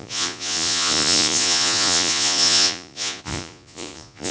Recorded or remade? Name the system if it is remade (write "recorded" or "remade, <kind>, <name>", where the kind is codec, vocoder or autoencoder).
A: remade, vocoder, Vocos